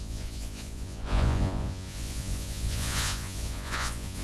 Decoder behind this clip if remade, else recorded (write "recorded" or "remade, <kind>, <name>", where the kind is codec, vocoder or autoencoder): remade, vocoder, Vocos